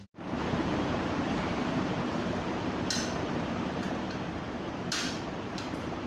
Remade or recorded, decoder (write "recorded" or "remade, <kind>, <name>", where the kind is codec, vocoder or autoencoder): remade, vocoder, BigVGAN v2